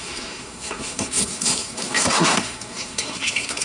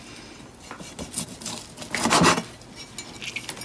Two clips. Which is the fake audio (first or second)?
first